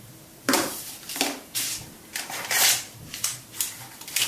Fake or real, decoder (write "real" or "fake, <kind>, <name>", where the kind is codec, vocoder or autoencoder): fake, vocoder, BigVGAN v2